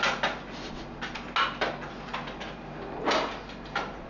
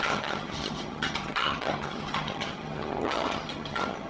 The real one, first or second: first